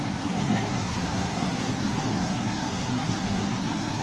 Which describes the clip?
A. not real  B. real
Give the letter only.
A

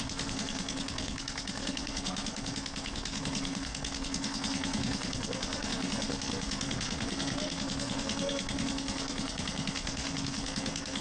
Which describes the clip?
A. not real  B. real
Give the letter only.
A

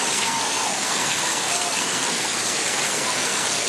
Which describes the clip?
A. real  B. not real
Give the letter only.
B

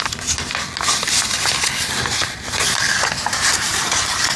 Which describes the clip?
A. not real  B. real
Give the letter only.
B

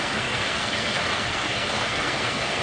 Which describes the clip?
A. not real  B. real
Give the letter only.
A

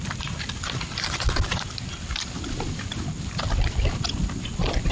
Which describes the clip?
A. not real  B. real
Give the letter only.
B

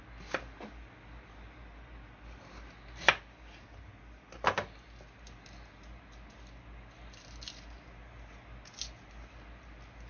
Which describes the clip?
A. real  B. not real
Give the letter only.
A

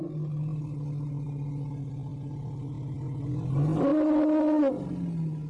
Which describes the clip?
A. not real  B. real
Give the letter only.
B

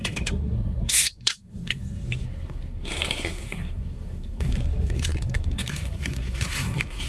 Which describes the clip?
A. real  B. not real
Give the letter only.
B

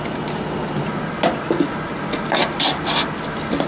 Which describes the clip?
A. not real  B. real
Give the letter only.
B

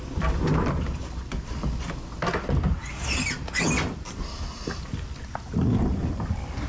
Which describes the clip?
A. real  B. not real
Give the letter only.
A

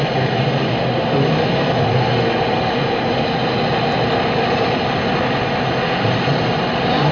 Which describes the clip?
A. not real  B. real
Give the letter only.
B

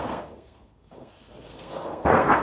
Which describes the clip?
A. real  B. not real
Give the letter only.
B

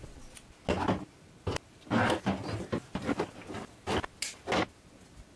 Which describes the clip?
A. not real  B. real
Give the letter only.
B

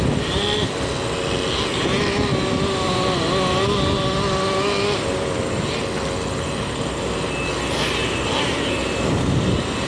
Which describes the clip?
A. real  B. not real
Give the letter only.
A